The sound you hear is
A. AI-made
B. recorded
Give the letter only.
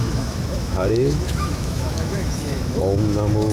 A